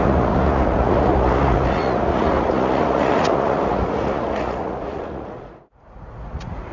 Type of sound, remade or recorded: remade